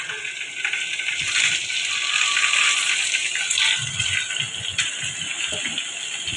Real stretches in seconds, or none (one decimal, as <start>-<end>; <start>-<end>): 0.0-6.4